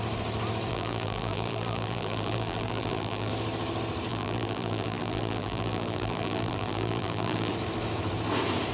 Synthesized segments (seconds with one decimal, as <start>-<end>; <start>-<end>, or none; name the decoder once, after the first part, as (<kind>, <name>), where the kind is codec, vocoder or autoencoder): 0.7-3.3 (vocoder, BigVGAN v2); 4.1-7.5